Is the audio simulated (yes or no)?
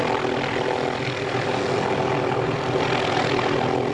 no